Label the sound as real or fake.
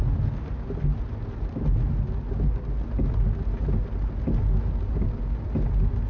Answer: real